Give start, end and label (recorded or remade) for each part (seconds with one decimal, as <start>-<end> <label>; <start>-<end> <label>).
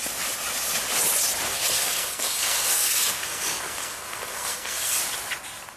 0.0-1.5 recorded; 1.5-5.0 remade; 5.0-5.8 recorded